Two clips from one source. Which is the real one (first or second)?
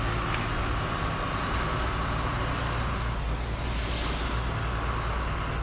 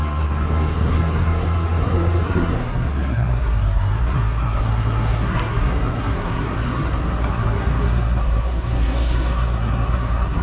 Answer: first